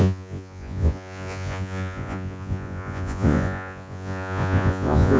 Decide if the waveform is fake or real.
fake